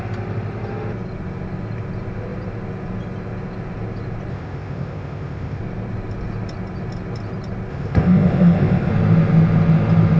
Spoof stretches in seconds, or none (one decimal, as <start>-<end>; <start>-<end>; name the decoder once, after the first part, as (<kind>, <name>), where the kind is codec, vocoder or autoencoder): 4.3-5.6 (codec, ZipCodec); 7.7-8.9